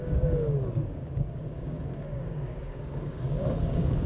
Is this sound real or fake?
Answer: fake